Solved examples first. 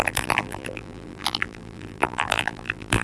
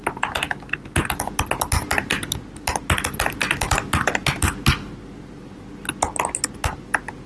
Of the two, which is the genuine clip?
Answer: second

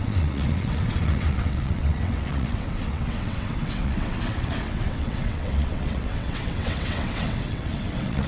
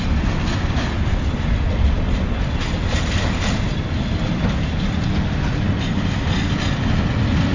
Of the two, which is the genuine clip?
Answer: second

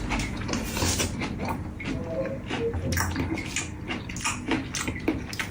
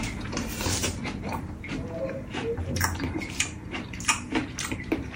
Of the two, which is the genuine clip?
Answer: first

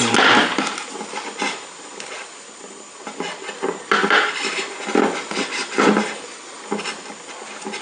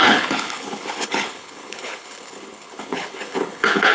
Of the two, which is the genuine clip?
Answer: first